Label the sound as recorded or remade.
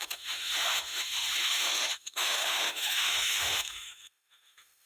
remade